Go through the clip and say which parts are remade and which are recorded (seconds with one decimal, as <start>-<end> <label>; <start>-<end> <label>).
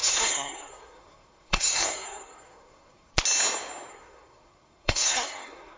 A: 0.0-3.1 remade; 3.1-3.9 recorded; 3.9-5.8 remade